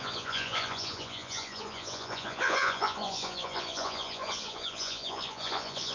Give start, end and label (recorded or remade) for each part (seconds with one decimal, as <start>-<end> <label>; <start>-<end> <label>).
0.0-5.9 remade